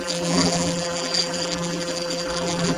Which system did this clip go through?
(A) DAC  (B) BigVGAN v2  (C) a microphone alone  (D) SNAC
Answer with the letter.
B